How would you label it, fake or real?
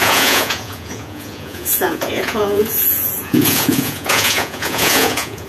fake